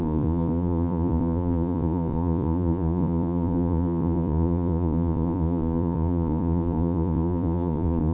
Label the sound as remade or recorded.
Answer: remade